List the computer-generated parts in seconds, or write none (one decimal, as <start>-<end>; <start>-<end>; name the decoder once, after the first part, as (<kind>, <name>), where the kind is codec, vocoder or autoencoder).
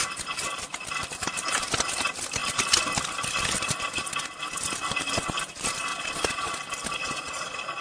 5.9-6.6 (vocoder, Vocos); 7.0-7.8